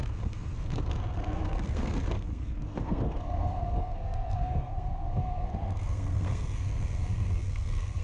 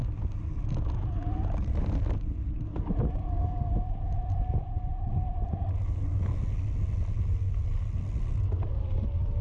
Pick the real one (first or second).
second